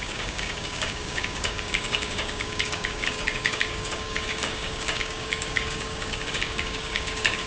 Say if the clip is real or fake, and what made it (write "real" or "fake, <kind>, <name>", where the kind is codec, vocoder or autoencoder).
fake, codec, DAC